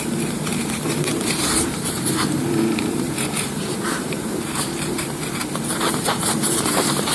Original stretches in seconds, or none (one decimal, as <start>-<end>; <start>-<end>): 5.4-6.0